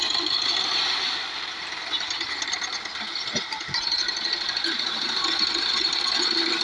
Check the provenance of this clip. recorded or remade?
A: remade